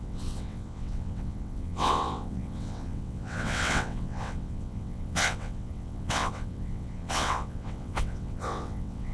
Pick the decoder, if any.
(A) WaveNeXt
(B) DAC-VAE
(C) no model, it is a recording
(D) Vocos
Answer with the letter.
A